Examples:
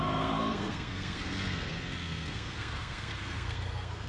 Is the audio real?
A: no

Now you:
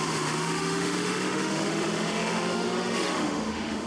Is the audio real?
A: no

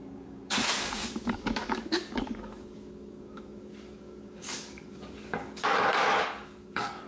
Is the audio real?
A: no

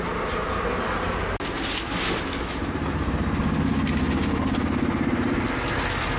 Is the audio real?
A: yes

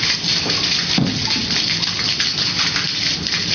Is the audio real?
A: yes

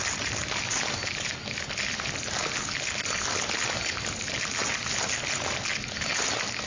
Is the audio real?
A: yes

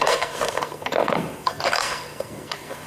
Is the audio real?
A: no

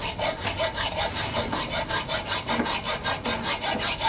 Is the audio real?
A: yes